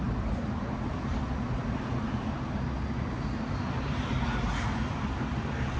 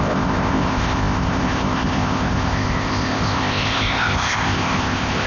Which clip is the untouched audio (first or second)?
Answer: first